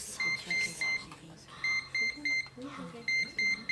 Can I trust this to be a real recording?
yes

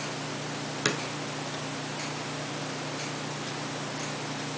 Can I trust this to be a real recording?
yes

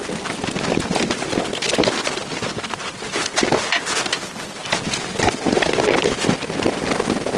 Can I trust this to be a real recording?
yes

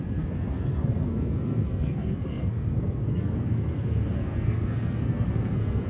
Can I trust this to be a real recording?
no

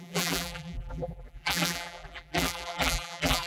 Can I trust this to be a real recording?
no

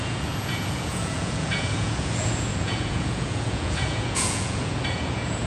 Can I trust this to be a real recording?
no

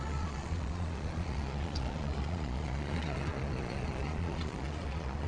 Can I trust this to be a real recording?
no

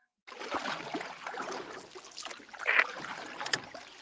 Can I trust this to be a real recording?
yes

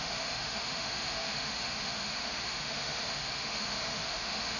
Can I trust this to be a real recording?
no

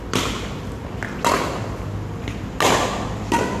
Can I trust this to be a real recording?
yes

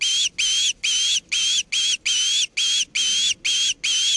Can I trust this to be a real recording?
yes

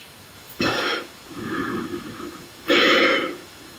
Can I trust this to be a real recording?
no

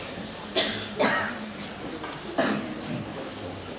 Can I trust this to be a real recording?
yes